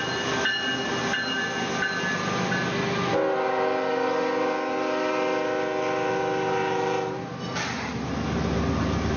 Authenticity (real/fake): real